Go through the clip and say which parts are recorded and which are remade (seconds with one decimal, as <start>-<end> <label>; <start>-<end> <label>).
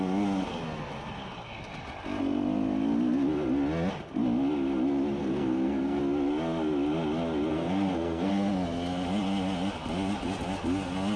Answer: 0.0-5.2 recorded; 5.2-6.0 remade; 6.0-7.5 recorded; 7.5-8.3 remade; 8.3-11.2 recorded